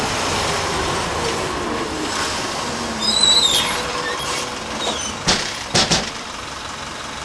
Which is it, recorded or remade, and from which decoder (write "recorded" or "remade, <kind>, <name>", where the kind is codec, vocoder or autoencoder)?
remade, vocoder, BigVGAN v2